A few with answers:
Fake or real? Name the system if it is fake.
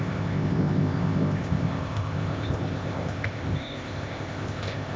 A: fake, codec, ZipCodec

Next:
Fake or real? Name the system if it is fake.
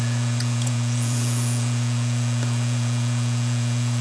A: fake, vocoder, Vocos